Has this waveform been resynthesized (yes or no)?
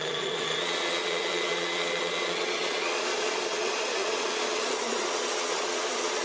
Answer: yes